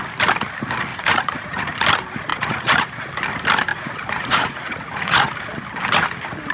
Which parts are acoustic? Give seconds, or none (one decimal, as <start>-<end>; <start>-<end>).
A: 0.0-0.9; 1.6-2.3; 3.1-3.7; 5.3-6.5